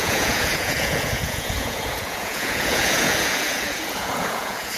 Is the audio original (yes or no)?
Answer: no